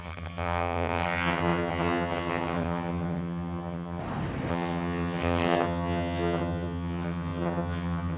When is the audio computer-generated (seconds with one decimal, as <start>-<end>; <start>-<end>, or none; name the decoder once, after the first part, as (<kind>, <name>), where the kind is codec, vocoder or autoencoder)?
0.0-4.0 (vocoder, HiFi-GAN); 4.5-8.2